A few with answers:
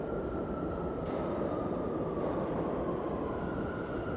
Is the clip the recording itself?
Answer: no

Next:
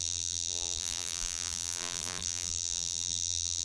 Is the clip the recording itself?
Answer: no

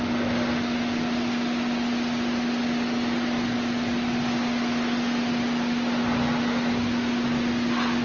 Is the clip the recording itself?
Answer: yes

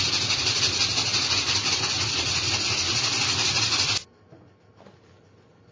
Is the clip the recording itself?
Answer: yes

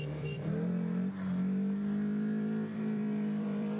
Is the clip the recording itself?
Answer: no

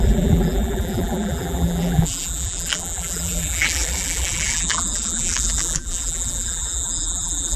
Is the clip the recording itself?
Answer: no